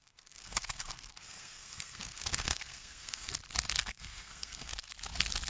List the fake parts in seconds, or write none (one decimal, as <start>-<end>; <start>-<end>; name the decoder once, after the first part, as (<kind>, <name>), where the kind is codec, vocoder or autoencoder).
0.0-3.3 (codec, SNAC); 3.8-4.9